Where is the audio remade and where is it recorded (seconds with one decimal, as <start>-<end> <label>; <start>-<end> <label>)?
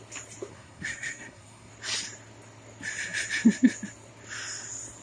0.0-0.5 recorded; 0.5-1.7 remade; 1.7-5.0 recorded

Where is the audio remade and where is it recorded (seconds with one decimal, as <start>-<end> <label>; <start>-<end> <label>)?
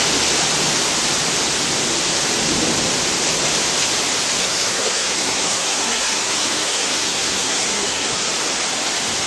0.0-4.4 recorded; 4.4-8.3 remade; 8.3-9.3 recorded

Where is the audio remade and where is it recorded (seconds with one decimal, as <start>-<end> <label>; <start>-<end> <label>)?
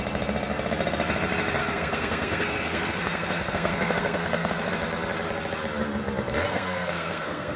0.0-1.6 recorded; 1.6-4.7 remade; 4.7-6.5 recorded; 6.5-7.6 remade